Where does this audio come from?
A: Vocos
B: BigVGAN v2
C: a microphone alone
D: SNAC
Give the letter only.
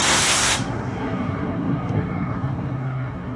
D